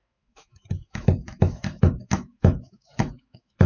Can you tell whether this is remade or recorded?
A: remade